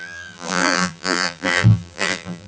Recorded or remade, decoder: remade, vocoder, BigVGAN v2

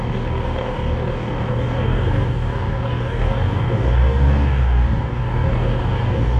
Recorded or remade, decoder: remade, codec, DAC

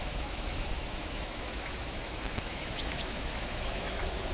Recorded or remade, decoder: remade, autoencoder, DAC-VAE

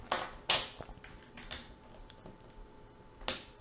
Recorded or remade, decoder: recorded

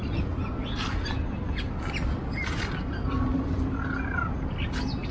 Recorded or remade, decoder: recorded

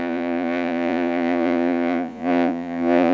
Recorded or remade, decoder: remade, vocoder, Vocos